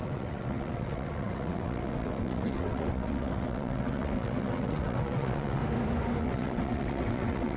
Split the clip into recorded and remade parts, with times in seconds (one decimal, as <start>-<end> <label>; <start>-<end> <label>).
0.0-5.6 remade; 5.6-6.2 recorded; 6.2-7.6 remade